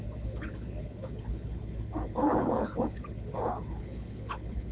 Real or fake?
fake